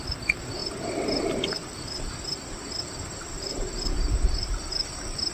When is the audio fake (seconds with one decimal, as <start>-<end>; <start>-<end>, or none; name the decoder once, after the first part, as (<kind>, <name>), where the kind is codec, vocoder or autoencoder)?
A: none